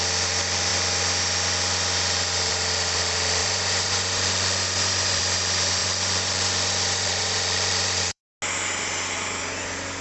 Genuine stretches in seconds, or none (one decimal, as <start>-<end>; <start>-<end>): 0.0-3.4; 5.2-5.8; 8.2-10.0